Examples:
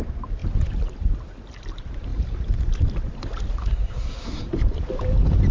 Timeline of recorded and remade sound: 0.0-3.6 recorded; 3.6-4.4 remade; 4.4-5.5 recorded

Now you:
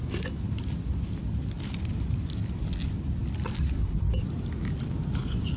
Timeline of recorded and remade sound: 0.0-5.6 recorded

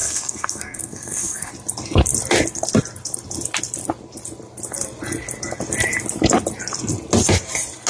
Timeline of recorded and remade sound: 0.0-1.5 remade; 1.5-7.9 recorded

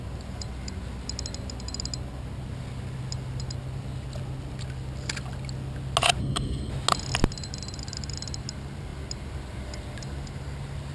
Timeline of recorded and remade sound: 0.0-6.2 recorded; 6.2-6.7 remade; 6.7-10.9 recorded

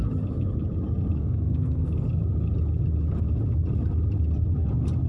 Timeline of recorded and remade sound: 0.0-1.2 recorded; 1.2-1.9 remade; 1.9-5.1 recorded

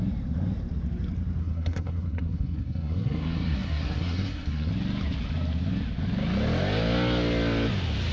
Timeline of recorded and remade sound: 0.0-1.4 recorded; 1.4-4.7 remade; 4.7-8.1 recorded

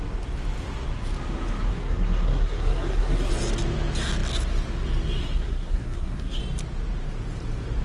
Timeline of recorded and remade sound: 0.0-1.7 recorded; 1.7-3.3 remade; 3.3-5.2 recorded; 5.2-6.4 remade; 6.4-7.8 recorded

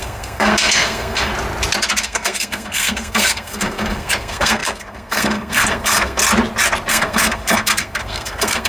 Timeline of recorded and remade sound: 0.0-1.3 remade; 1.3-2.0 recorded; 2.0-6.2 remade; 6.2-6.9 recorded; 6.9-8.7 remade